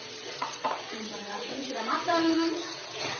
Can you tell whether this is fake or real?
fake